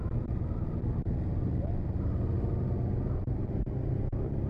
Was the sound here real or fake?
real